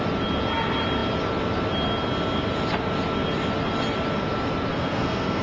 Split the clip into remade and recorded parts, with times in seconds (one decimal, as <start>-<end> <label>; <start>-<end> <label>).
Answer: 0.0-4.7 recorded; 4.7-5.4 remade